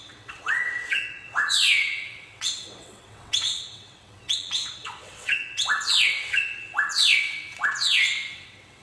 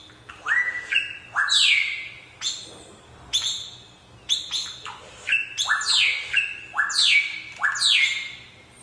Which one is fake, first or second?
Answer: first